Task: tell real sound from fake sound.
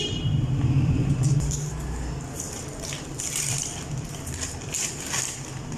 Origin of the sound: fake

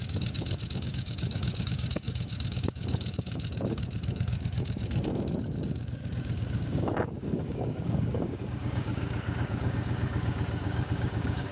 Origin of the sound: fake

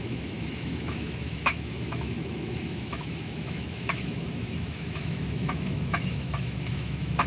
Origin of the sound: fake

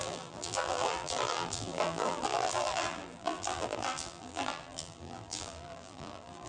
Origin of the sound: fake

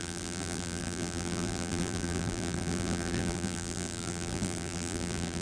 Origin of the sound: fake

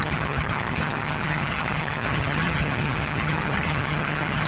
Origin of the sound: fake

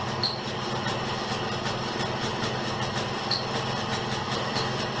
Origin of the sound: real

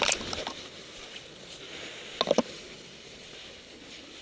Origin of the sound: real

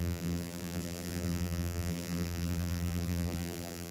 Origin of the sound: fake